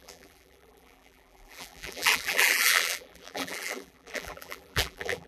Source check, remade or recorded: remade